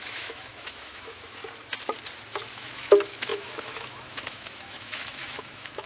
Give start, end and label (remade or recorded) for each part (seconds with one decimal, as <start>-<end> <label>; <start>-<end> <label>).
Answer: 0.0-1.4 remade; 1.4-2.5 recorded; 2.5-5.9 remade